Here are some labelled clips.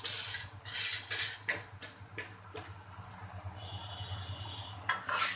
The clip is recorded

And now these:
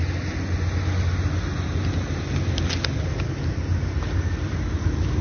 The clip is recorded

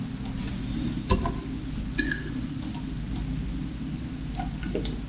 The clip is recorded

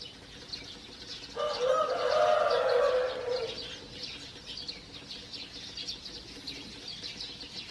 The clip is recorded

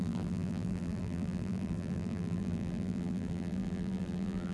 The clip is remade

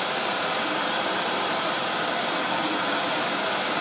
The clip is remade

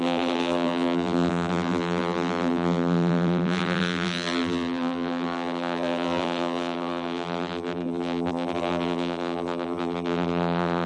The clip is remade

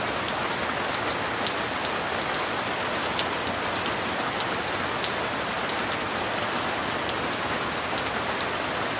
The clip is recorded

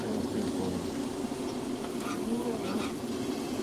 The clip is remade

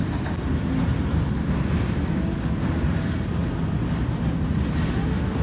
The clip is recorded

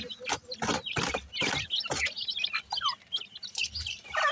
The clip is recorded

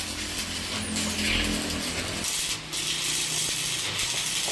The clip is recorded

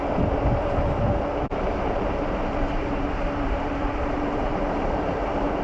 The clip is remade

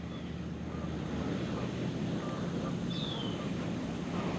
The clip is recorded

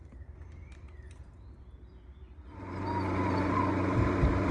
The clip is remade